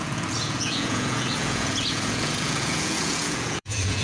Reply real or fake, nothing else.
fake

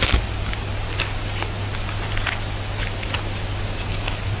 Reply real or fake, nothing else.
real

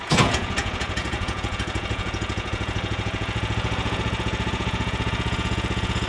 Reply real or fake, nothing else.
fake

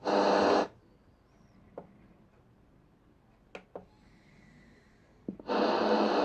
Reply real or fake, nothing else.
real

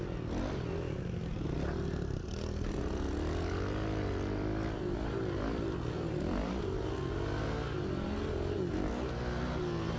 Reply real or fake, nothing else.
real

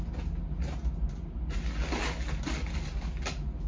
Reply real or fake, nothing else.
real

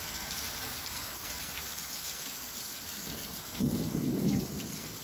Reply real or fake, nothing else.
fake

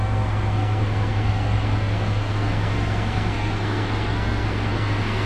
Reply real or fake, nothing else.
fake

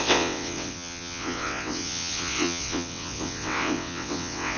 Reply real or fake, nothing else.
fake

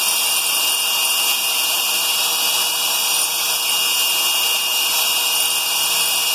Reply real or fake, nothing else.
real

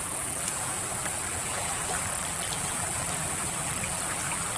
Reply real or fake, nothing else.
fake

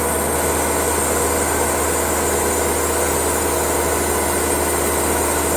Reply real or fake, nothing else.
real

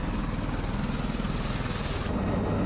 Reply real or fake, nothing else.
real